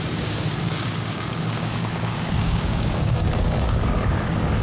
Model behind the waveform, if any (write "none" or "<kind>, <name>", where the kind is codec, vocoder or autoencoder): codec, DAC